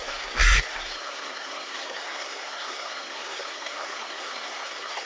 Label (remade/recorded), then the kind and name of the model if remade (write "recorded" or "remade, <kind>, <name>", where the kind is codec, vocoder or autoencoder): remade, codec, SNAC